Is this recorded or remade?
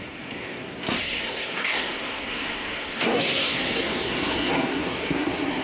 remade